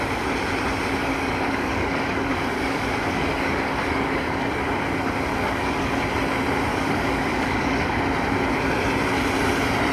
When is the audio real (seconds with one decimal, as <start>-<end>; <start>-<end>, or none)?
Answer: 0.0-1.0; 4.6-5.3; 6.0-6.7; 8.0-9.9